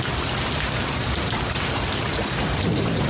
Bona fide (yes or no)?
yes